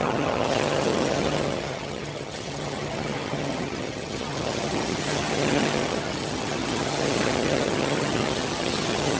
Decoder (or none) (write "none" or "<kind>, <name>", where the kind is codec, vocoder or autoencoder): vocoder, HiFi-GAN